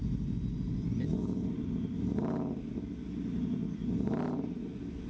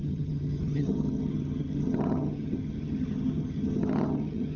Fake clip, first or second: second